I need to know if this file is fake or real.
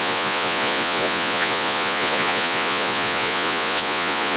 fake